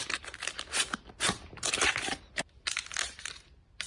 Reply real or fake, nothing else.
fake